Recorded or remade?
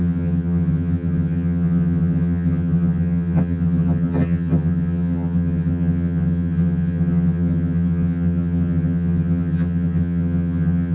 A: remade